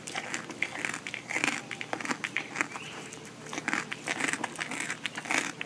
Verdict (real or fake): real